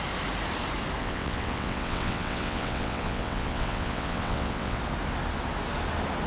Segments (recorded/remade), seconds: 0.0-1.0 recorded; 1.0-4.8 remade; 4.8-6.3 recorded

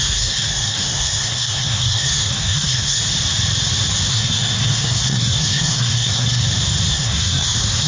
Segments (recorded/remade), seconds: 0.0-3.0 remade; 3.0-4.1 recorded; 4.1-6.4 remade; 6.4-6.9 recorded; 6.9-7.9 remade

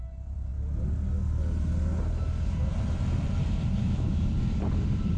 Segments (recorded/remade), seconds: 0.0-3.8 recorded; 3.8-4.3 remade; 4.3-5.2 recorded

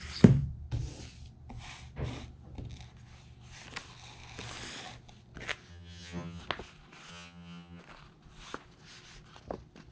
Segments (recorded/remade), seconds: 0.0-5.7 recorded; 5.7-6.4 remade; 6.4-7.1 recorded; 7.1-7.8 remade; 7.8-9.9 recorded

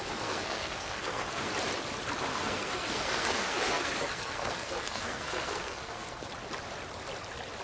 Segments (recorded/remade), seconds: 0.0-1.5 remade; 1.5-2.3 recorded; 2.3-6.3 remade; 6.3-7.6 recorded

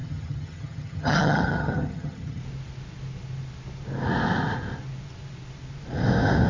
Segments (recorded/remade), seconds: 0.0-2.4 remade; 2.4-6.5 recorded

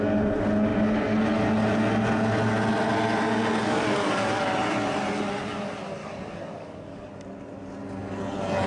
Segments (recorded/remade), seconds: 0.0-3.6 recorded; 3.6-4.4 remade; 4.4-6.0 recorded; 6.0-7.1 remade; 7.1-8.7 recorded